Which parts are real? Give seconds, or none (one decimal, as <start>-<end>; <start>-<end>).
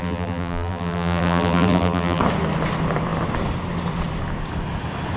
2.2-5.2